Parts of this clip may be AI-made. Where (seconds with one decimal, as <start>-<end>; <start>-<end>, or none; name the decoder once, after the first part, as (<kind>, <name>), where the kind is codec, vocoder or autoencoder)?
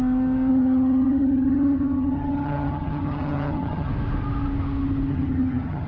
0.5-3.9 (vocoder, HiFi-GAN); 5.1-5.9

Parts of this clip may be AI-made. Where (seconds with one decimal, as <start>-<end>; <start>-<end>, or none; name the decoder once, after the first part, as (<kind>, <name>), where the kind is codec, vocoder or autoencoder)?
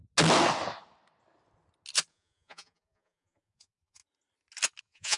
2.1-4.0 (vocoder, Vocos); 4.8-5.2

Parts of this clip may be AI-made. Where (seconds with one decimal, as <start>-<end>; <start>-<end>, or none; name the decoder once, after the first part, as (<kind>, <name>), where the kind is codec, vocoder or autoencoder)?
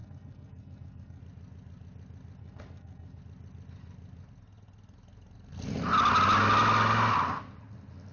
0.0-1.2 (codec, SNAC); 2.4-3.2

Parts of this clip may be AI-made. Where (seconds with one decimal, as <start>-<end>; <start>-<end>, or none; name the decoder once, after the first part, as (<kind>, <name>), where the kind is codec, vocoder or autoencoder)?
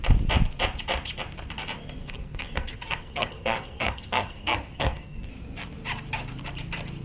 2.0-5.3 (codec, SNAC)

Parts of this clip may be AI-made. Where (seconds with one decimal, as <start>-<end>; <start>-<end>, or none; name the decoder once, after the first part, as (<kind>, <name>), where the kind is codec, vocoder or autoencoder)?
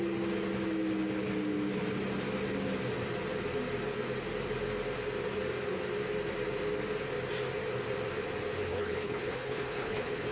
8.7-10.3 (codec, HILCodec)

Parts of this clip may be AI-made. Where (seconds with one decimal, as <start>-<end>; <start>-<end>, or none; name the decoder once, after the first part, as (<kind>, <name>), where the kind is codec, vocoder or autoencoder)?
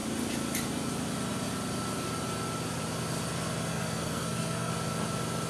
3.7-4.7 (codec, SNAC)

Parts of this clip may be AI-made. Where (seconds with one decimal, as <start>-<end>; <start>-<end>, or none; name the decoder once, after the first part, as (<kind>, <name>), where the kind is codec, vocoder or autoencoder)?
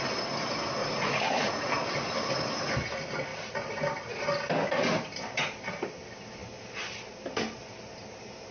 0.8-1.5 (vocoder, Vocos)